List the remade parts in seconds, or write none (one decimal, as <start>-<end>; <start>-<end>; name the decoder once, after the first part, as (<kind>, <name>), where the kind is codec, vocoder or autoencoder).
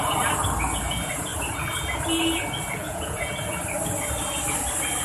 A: 2.8-3.3 (vocoder, Vocos)